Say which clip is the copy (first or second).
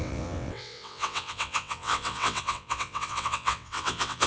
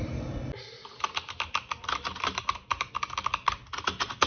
first